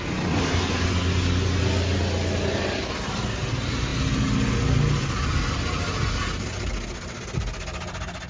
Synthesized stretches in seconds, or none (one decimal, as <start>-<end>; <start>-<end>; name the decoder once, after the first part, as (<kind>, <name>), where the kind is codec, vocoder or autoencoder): none